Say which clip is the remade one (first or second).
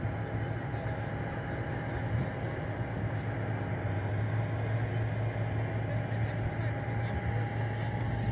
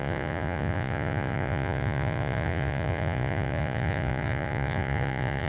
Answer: second